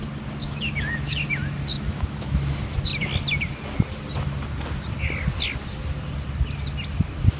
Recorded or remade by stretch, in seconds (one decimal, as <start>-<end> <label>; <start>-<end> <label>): 0.0-0.4 recorded; 0.4-1.2 remade; 1.2-1.7 recorded; 1.7-2.4 remade; 2.4-7.4 recorded

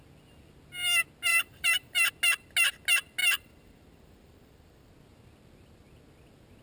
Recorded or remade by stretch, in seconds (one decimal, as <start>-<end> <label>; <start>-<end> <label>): 0.0-1.3 recorded; 1.3-2.1 remade; 2.1-3.2 recorded; 3.2-4.9 remade; 4.9-6.6 recorded

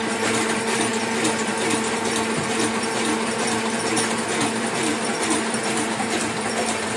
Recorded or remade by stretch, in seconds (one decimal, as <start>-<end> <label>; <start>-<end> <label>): 0.0-7.0 recorded

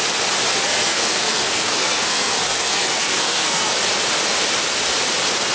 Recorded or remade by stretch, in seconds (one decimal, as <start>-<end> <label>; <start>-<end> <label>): 0.0-0.5 recorded; 0.5-3.8 remade; 3.8-5.5 recorded

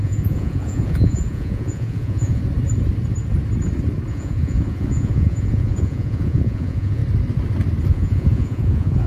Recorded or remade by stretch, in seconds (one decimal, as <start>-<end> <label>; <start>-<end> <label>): 0.0-2.4 remade; 2.4-4.1 recorded; 4.1-7.0 remade; 7.0-7.9 recorded; 7.9-9.1 remade

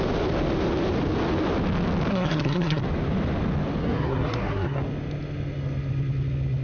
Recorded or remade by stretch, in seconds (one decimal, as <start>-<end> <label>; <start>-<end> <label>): 0.0-2.1 recorded; 2.1-2.8 remade; 2.8-3.8 recorded; 3.8-4.8 remade; 4.8-6.6 recorded

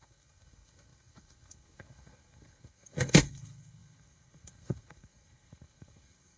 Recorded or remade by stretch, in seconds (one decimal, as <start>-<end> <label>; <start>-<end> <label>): 0.0-6.4 remade